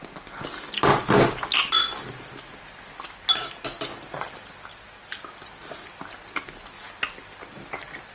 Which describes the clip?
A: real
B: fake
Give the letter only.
A